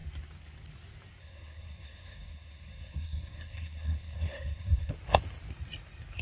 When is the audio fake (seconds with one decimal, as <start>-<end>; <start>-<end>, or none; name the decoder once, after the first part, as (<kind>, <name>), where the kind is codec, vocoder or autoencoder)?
1.2-4.9 (codec, SNAC)